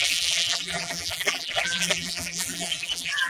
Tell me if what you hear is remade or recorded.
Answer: remade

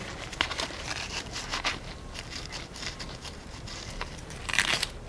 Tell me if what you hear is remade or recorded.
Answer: remade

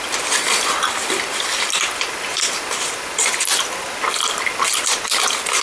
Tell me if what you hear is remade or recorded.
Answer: remade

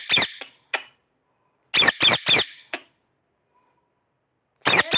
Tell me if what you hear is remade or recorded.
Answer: recorded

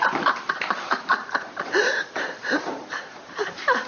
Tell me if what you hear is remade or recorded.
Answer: remade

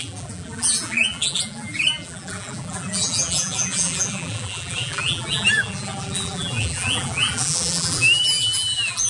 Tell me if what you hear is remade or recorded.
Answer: remade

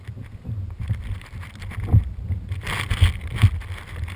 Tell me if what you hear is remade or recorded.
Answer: recorded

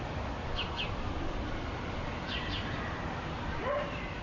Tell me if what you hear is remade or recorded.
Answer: recorded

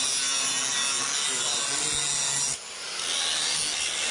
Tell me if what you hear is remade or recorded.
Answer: recorded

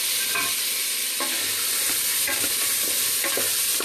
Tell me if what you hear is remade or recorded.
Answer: recorded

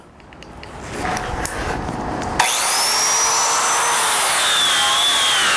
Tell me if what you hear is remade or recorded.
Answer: recorded